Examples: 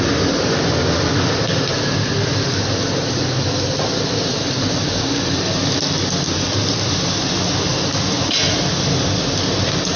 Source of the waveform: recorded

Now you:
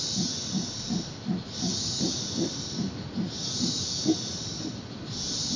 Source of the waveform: recorded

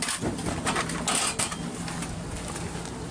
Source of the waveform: recorded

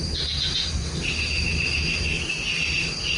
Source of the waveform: recorded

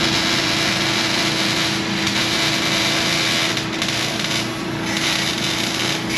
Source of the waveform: recorded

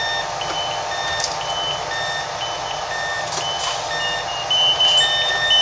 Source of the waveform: recorded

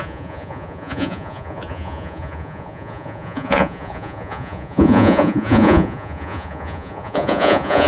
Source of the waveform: remade